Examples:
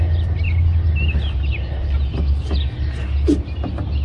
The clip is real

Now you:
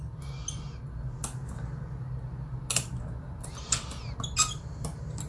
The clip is real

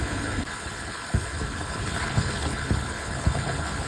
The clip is fake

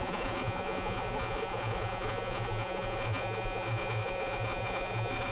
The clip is fake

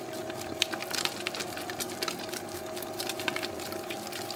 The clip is real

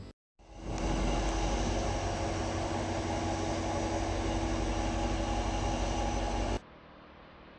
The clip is real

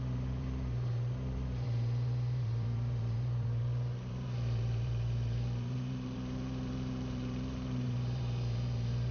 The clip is fake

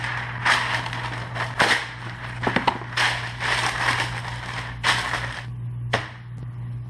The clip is real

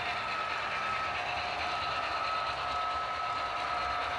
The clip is real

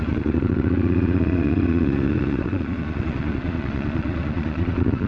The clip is fake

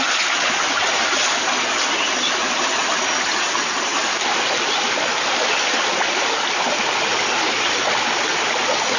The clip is real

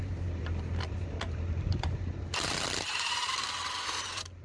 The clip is fake